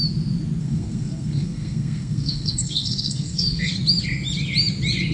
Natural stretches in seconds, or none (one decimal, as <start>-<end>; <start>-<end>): 0.0-0.6; 3.7-5.1